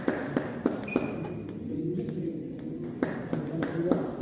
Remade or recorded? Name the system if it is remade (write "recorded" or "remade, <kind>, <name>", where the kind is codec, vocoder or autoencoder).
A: recorded